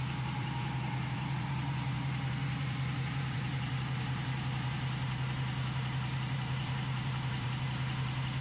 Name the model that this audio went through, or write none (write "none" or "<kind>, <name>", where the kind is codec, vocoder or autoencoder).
vocoder, BigVGAN v2